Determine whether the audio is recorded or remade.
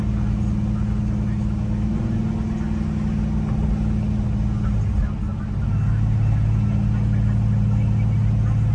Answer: recorded